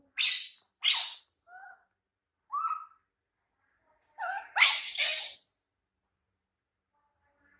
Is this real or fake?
real